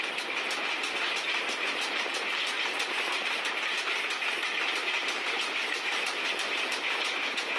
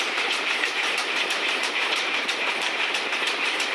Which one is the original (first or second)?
first